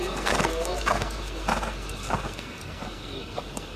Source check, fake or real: fake